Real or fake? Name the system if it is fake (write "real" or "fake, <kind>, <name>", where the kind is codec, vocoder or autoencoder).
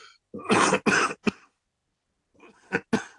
real